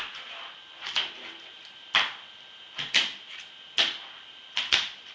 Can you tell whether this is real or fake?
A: real